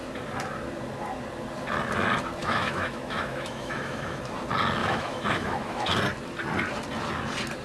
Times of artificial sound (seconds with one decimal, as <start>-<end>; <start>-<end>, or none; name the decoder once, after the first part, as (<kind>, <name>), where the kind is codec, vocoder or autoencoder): 2.4-4.2 (autoencoder, DAC-VAE); 4.8-5.9